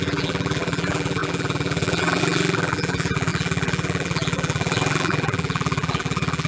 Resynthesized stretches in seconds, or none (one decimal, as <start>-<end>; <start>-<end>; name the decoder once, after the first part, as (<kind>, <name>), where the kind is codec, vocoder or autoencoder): 0.0-6.5 (vocoder, BigVGAN v2)